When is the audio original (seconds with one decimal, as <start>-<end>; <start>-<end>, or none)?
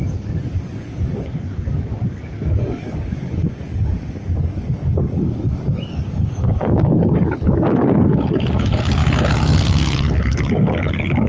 9.0-9.6